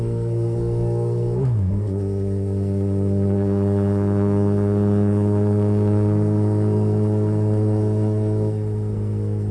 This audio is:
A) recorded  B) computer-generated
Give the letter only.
B